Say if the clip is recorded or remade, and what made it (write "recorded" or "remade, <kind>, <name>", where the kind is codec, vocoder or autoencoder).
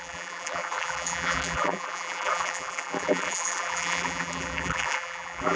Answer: remade, vocoder, BigVGAN v2